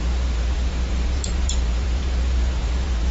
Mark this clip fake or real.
fake